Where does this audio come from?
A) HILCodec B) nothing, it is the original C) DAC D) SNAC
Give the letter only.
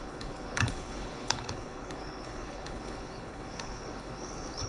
A